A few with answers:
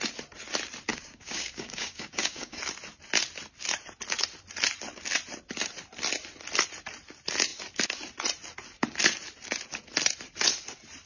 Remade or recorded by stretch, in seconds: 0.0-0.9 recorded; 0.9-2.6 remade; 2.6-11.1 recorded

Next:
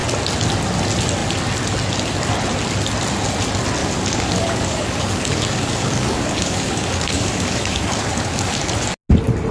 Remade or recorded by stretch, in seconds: 0.0-3.8 recorded; 3.8-8.7 remade; 8.7-9.5 recorded

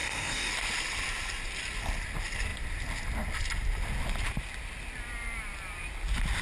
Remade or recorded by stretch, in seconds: 0.0-0.5 remade; 0.5-6.4 recorded